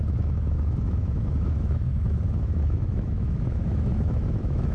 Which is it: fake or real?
fake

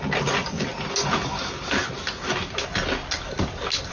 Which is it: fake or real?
real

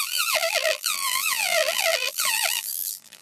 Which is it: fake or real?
fake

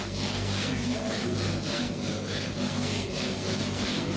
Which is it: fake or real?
fake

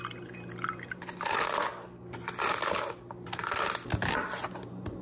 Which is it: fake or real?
real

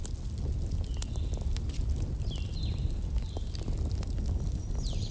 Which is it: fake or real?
real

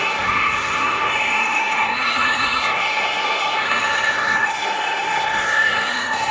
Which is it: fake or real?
fake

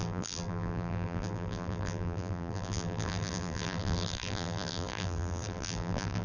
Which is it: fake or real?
fake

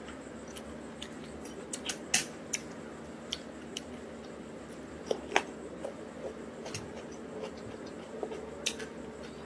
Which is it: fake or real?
real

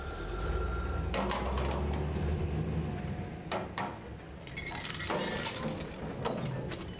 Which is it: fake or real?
real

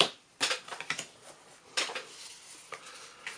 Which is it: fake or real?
real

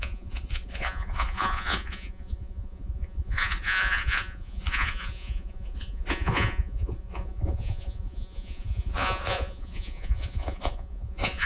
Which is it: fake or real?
fake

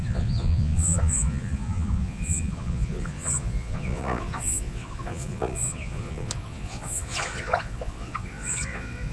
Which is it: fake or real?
fake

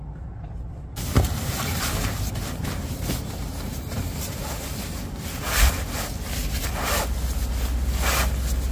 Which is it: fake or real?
real